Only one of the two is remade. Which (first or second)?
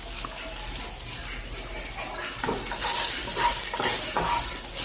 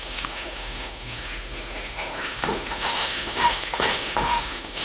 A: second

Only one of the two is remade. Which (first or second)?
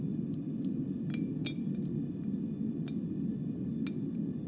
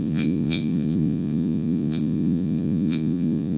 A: second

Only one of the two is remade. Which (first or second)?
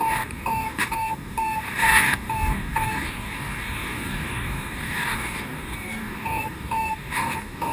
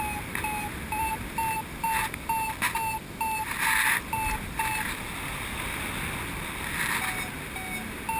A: first